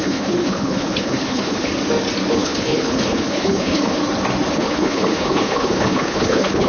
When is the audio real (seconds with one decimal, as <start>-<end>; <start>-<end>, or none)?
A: 1.7-2.3; 4.0-4.5